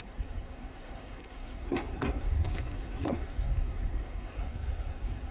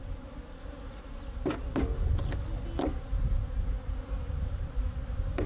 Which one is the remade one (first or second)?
first